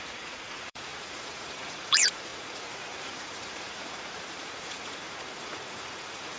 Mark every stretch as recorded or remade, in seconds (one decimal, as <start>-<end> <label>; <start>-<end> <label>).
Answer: 0.0-6.4 remade